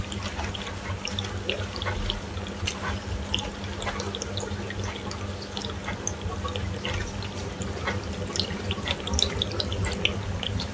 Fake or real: real